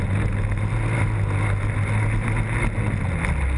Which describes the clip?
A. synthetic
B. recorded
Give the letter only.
B